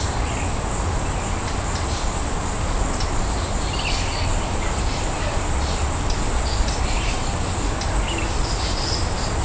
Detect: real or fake real